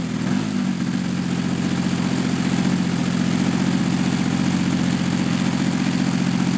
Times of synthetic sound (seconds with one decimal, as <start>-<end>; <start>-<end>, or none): none